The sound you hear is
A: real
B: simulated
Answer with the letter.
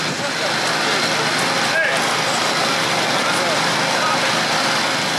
A